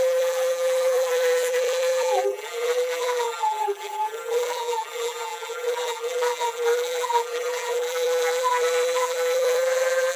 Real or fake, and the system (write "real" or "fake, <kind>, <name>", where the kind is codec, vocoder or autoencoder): fake, vocoder, BigVGAN v2